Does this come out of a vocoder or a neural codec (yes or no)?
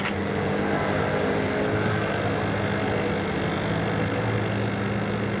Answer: no